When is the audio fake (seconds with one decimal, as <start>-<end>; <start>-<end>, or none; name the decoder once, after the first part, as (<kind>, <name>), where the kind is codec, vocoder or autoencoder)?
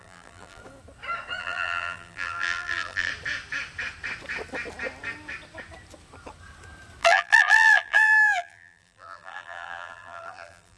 0.0-0.6 (vocoder, BigVGAN v2); 1.4-3.1; 7.0-10.8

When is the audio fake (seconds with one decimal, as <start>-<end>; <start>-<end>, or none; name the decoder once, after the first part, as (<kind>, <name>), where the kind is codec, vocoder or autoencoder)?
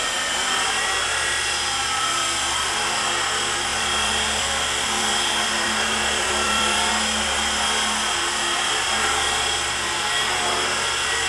3.7-6.9 (vocoder, BigVGAN v2)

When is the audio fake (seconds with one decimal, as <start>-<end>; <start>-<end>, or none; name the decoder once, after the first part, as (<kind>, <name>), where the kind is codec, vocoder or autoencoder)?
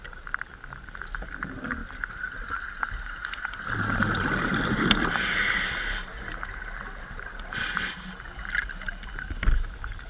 none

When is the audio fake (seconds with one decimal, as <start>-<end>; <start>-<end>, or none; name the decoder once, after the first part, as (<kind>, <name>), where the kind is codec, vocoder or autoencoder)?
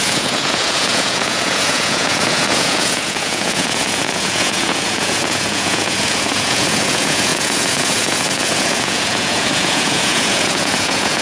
0.0-11.2 (vocoder, Vocos)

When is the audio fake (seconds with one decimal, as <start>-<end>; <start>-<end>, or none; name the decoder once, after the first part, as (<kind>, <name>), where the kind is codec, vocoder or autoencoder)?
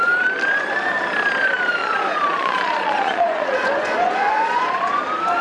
1.8-5.0 (vocoder, Vocos)